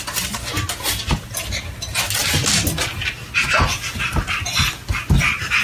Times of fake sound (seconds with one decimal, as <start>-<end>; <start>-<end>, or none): none